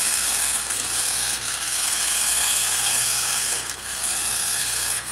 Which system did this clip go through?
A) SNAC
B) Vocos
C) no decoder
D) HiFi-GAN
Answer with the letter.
A